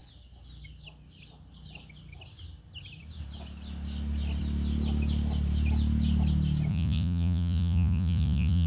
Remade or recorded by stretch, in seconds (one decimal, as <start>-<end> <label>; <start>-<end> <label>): 0.0-6.7 recorded; 6.7-8.7 remade